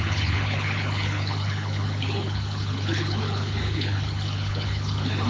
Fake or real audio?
fake